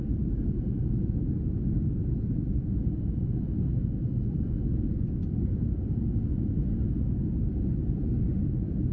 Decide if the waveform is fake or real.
real